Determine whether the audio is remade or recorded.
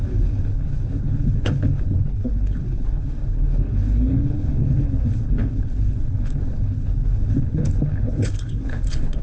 remade